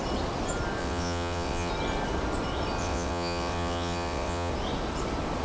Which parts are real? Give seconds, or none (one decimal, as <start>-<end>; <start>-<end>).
0.0-0.8; 1.7-2.8; 4.5-5.4